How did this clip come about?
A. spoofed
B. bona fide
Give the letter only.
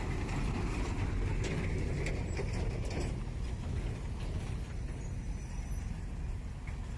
B